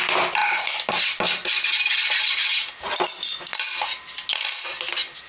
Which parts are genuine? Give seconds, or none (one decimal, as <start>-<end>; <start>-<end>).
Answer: 0.0-5.3